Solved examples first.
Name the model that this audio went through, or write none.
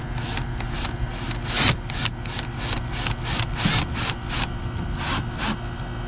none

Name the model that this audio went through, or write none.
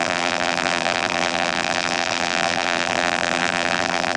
vocoder, BigVGAN v2